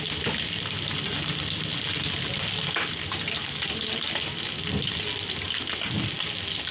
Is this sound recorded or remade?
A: recorded